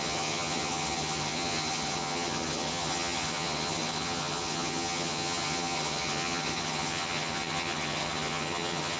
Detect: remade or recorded remade